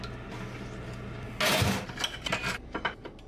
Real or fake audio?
real